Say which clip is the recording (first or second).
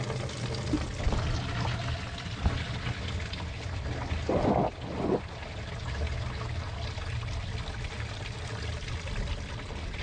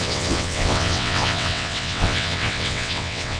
first